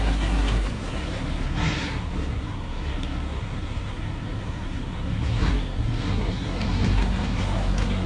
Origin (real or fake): fake